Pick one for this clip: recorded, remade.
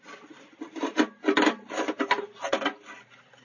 recorded